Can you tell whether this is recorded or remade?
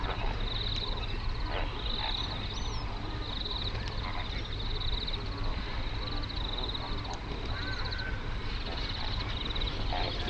recorded